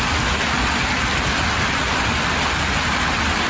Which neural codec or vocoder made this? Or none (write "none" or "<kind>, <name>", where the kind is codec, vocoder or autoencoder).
none